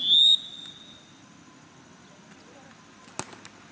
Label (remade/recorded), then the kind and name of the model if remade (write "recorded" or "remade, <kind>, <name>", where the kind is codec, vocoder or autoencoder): recorded